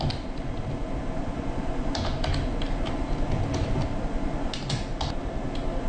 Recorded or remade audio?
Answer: recorded